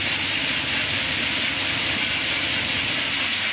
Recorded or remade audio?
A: recorded